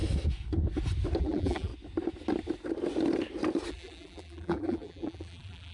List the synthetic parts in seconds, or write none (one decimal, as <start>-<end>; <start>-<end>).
1.2-1.7; 3.7-5.7